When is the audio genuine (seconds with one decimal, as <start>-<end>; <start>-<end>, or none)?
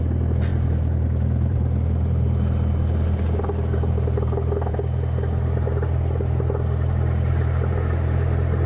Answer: 0.0-0.5; 4.7-8.7